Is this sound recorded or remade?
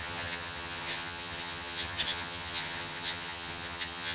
remade